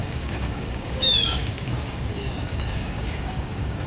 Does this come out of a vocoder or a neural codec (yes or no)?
yes